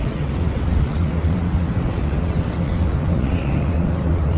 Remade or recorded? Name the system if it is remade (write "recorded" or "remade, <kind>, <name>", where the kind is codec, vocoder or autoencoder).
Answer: remade, vocoder, WaveNeXt